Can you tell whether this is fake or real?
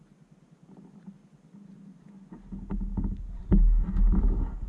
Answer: real